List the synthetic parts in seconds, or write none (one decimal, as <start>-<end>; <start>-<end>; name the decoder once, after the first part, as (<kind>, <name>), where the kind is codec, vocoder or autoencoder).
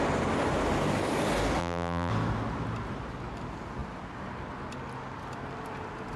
1.6-2.1 (vocoder, BigVGAN v2)